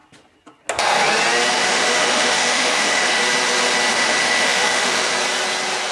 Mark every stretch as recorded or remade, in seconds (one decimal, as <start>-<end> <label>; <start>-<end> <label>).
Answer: 0.0-1.5 recorded; 1.5-3.2 remade; 3.2-3.9 recorded; 3.9-5.1 remade; 5.1-5.9 recorded

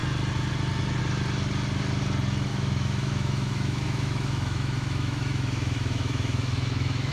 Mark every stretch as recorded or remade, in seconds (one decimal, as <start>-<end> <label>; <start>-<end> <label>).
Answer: 0.0-2.5 recorded; 2.5-7.1 remade

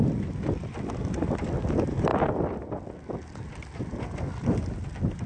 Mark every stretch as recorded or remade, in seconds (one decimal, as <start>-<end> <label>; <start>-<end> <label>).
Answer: 0.0-5.3 recorded